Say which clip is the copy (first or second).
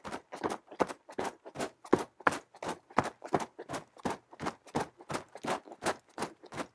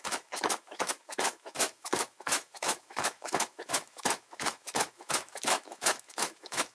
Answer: second